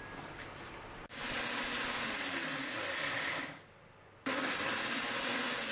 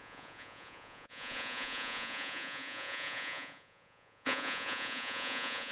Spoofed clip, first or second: second